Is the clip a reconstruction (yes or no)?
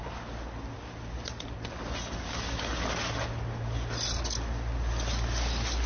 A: no